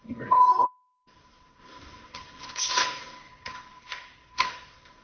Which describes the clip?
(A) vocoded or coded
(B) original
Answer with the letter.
A